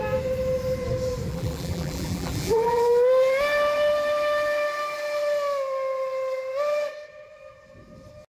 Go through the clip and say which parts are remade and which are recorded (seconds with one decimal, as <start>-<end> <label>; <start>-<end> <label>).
0.0-1.3 recorded; 1.3-2.8 remade; 2.8-8.4 recorded